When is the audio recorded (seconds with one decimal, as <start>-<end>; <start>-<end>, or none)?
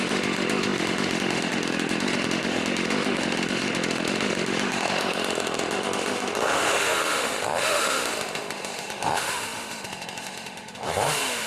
none